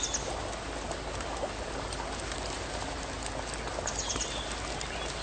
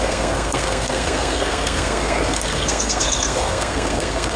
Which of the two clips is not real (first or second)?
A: second